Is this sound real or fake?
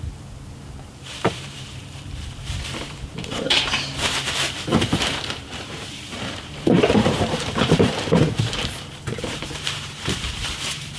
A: fake